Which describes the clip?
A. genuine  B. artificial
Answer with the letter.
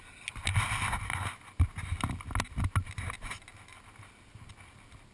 A